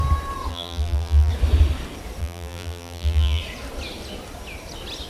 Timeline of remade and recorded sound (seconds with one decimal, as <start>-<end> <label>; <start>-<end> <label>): 0.0-0.5 recorded; 0.5-1.3 remade; 1.3-2.2 recorded; 2.2-3.4 remade; 3.4-5.1 recorded